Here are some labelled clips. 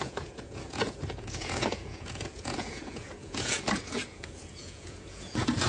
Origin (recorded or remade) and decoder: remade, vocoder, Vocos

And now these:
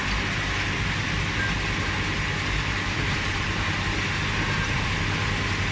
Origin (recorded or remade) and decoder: recorded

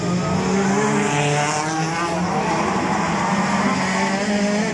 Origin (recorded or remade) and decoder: recorded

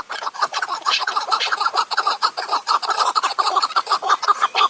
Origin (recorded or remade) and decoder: remade, vocoder, Vocos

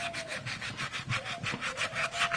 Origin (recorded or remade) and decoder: recorded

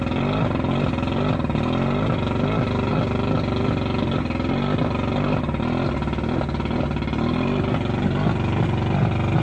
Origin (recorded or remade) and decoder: recorded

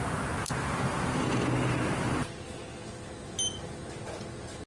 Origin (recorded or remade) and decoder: recorded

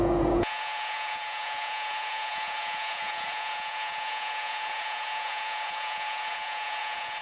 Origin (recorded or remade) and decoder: remade, vocoder, Vocos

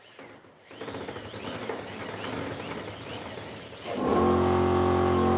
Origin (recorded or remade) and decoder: recorded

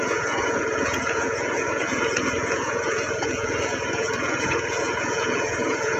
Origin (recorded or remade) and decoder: remade, vocoder, Vocos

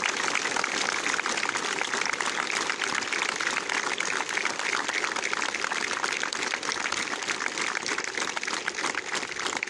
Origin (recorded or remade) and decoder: recorded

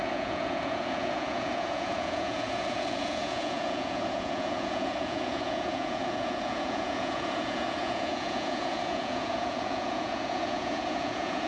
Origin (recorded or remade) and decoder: remade, vocoder, Vocos